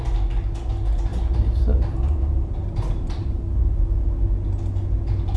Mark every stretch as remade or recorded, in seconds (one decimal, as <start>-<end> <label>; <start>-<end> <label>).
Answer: 0.0-1.1 recorded; 1.1-3.4 remade; 3.4-5.4 recorded